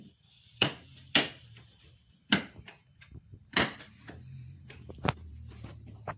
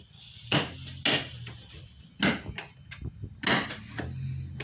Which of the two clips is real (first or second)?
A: second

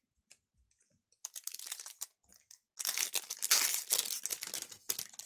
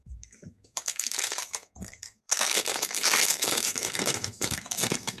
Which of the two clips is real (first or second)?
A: first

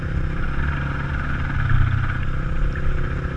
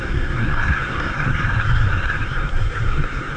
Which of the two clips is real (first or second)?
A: first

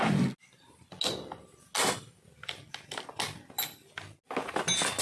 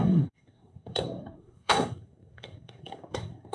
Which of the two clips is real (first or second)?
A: first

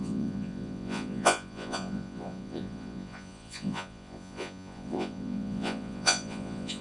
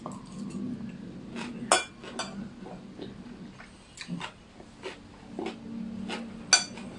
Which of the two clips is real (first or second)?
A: second